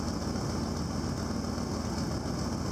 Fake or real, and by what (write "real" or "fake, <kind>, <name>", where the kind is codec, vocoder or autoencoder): real